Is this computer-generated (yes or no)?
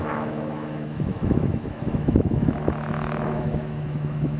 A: yes